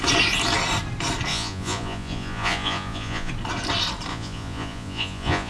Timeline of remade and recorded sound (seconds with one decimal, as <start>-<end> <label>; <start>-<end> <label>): 0.0-1.3 recorded; 1.3-3.3 remade; 3.3-4.1 recorded; 4.1-5.5 remade